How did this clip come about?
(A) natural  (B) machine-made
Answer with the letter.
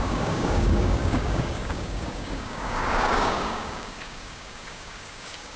B